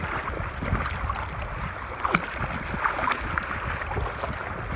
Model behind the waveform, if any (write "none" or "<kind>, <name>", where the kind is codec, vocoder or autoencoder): none